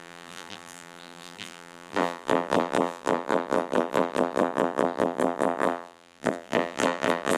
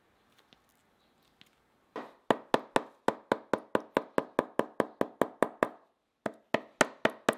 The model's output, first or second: first